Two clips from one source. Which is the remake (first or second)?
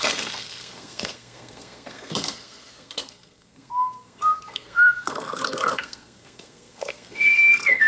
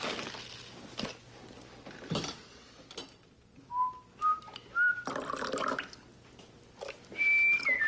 first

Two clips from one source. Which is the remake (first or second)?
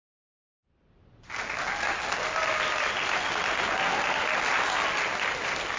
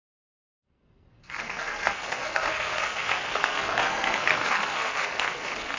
second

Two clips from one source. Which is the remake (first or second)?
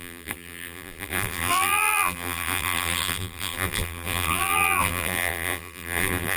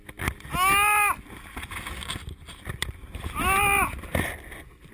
first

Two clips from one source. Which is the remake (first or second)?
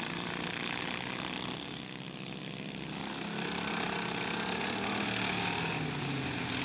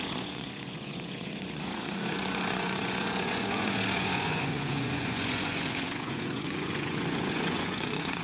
second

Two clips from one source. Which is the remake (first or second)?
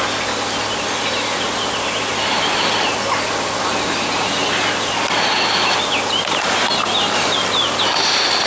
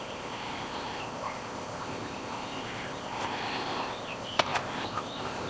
second